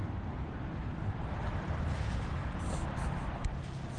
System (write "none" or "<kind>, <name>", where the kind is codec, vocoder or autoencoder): none